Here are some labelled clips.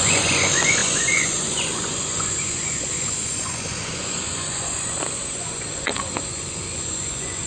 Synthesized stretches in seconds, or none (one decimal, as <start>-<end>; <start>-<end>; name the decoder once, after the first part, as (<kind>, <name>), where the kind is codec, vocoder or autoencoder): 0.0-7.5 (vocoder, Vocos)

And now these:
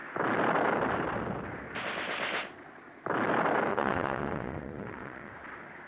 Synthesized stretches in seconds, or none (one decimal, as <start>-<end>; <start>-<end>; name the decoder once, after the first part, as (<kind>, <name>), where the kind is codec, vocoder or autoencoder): 3.7-5.3 (vocoder, Vocos)

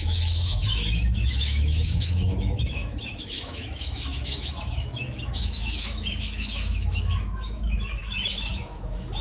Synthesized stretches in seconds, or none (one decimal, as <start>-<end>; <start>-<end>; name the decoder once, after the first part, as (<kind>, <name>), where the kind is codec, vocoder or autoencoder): 0.0-9.2 (autoencoder, DAC-VAE)